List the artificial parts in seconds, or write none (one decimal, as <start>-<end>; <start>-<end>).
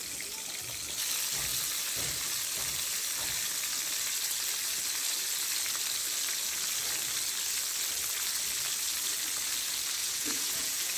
10.0-11.0